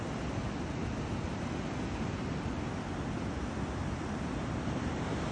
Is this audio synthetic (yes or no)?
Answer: no